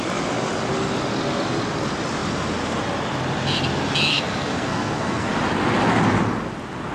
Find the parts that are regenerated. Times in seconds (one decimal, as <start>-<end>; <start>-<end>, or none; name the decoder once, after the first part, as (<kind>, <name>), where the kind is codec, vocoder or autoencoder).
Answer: 4.1-5.3 (codec, SNAC)